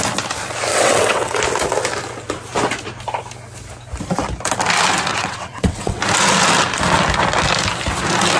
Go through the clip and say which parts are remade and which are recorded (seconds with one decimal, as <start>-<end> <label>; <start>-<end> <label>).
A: 0.0-0.7 recorded; 0.7-1.4 remade; 1.4-5.1 recorded; 5.1-6.0 remade; 6.0-8.4 recorded